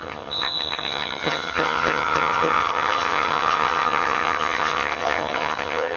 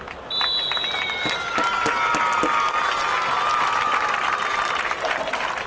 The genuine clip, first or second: second